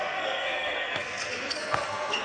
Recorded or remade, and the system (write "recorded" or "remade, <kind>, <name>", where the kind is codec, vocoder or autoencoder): remade, codec, SNAC